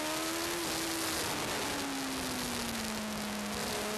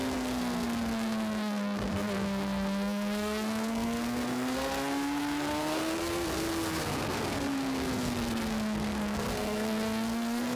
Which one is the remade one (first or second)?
second